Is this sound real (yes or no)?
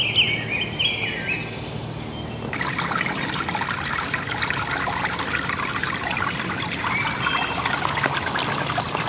yes